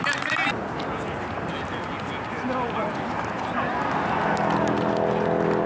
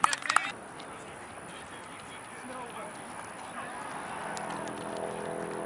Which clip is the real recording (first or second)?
first